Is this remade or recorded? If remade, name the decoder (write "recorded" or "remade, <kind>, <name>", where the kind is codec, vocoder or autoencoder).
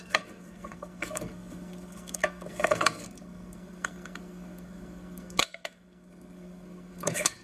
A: remade, codec, SNAC